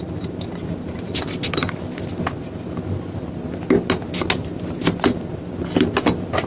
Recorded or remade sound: recorded